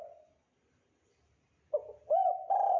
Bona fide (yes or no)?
yes